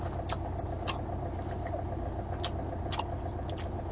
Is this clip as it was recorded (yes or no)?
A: yes